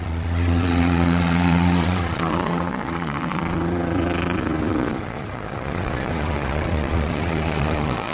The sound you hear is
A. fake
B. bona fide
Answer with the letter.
A